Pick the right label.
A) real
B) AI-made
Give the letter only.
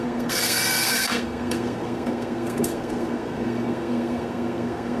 B